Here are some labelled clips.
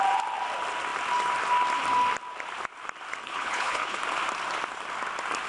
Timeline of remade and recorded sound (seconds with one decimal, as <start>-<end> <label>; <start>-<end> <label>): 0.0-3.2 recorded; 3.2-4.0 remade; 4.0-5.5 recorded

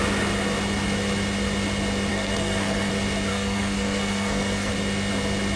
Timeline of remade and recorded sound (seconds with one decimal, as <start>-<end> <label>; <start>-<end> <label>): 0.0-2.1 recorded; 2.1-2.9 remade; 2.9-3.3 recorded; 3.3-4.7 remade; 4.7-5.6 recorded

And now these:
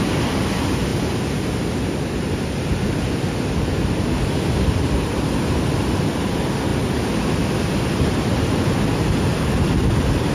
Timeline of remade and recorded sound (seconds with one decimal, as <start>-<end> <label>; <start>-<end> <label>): 0.0-10.3 recorded

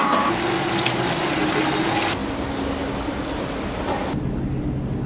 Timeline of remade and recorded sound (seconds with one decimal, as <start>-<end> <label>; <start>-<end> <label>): 0.0-5.1 recorded

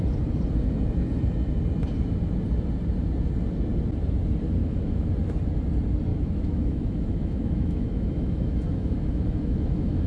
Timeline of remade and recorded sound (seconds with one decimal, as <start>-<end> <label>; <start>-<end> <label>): 0.0-4.6 recorded; 4.6-5.1 remade; 5.1-6.1 recorded; 6.1-10.1 remade